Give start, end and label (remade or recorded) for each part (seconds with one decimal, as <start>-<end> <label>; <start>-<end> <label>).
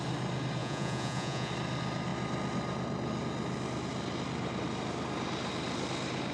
0.0-0.6 recorded; 0.6-1.5 remade; 1.5-6.3 recorded